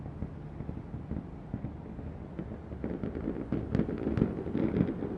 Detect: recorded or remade recorded